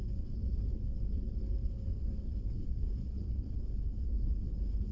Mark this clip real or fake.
fake